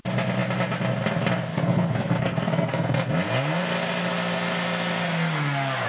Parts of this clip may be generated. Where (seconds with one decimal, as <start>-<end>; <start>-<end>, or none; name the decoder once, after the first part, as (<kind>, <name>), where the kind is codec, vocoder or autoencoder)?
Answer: 1.5-3.1 (codec, SNAC)